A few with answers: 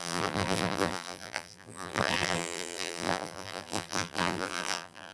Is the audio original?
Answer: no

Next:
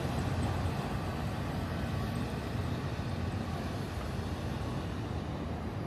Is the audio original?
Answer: yes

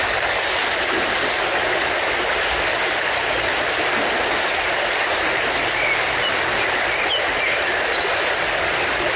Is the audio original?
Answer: yes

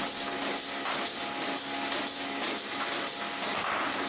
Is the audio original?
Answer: yes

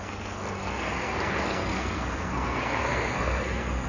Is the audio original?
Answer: no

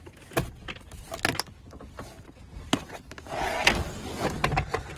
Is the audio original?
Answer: yes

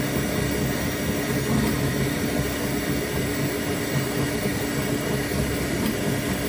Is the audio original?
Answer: yes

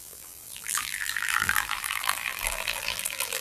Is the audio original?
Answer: no